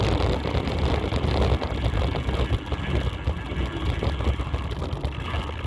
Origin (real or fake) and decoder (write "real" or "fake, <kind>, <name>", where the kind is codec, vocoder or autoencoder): real